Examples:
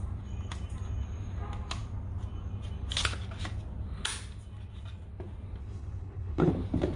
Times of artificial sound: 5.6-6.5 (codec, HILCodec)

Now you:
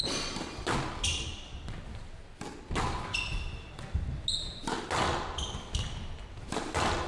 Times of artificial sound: none